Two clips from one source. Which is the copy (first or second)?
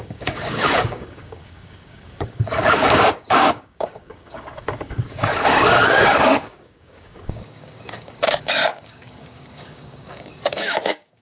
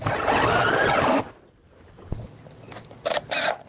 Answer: first